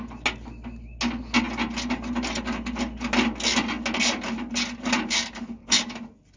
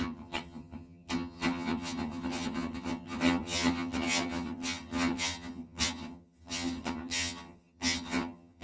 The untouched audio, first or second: first